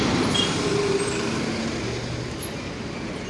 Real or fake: real